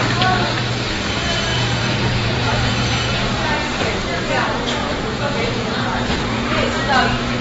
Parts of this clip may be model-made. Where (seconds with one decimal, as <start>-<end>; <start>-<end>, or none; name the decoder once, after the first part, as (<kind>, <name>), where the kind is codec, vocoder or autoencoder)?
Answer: 1.5-3.1 (vocoder, Vocos); 4.8-6.8